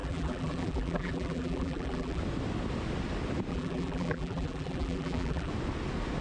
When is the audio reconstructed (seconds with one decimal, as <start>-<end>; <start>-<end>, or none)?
0.0-2.2; 3.5-5.5